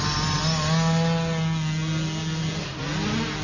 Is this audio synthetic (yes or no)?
no